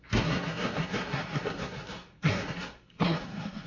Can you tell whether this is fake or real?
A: fake